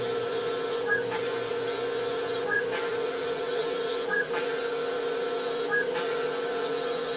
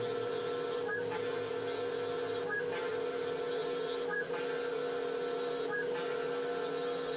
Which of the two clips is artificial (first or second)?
first